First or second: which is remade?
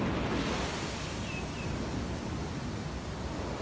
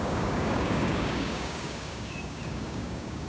second